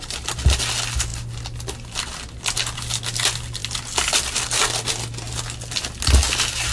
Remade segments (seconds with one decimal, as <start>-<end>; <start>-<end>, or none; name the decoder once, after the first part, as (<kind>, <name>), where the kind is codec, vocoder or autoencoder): none